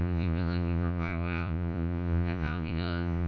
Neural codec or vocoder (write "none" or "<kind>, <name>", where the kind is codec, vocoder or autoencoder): vocoder, Vocos